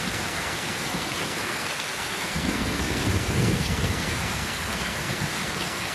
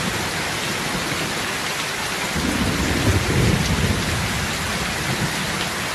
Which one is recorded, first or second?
second